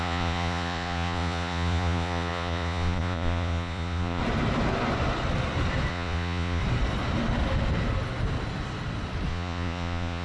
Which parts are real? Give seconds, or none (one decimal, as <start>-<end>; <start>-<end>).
4.2-5.9; 6.6-9.3